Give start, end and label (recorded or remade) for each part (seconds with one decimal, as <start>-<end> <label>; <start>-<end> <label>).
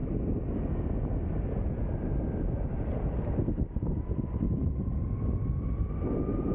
0.0-6.5 recorded